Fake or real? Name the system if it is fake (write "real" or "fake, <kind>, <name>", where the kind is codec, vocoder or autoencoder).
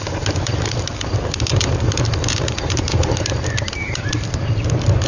fake, vocoder, BigVGAN v2